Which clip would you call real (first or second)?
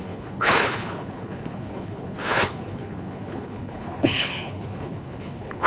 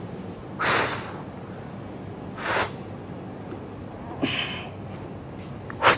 second